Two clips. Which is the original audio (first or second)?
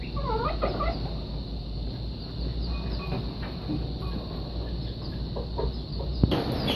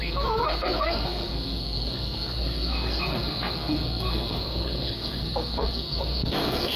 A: first